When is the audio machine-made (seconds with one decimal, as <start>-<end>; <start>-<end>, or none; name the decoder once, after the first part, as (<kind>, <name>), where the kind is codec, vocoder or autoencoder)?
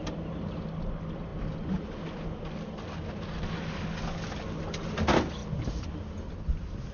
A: none